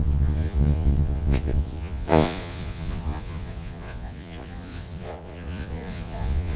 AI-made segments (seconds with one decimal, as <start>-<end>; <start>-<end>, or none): 0.0-6.6